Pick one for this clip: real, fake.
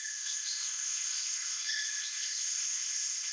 fake